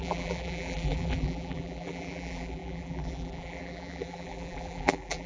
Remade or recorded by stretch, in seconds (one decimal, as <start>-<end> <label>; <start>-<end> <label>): 0.0-5.3 remade